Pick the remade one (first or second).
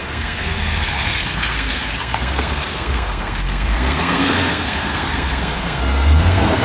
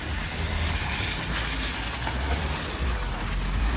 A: first